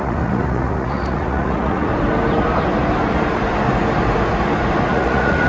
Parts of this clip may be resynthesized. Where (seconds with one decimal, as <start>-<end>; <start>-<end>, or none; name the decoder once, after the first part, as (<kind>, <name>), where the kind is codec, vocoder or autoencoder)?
0.0-1.9 (vocoder, Vocos); 4.9-5.5